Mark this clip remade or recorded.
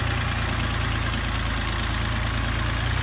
recorded